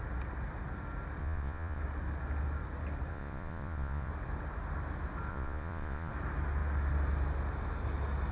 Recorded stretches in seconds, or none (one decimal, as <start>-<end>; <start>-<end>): 0.0-1.2; 1.8-3.1; 4.1-5.3; 6.1-8.3